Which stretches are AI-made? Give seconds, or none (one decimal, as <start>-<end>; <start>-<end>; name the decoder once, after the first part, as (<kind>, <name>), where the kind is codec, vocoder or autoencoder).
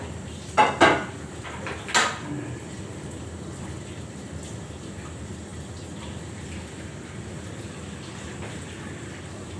none